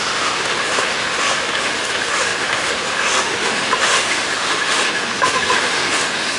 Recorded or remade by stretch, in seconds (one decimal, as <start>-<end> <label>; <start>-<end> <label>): 0.0-6.4 remade